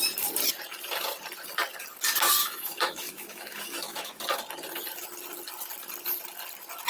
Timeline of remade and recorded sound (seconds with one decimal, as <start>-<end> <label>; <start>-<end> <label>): 0.0-2.4 recorded; 2.4-4.2 remade; 4.2-6.9 recorded